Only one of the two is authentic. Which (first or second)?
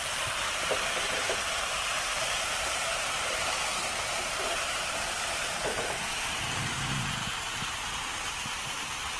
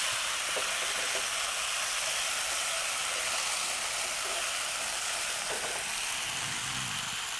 second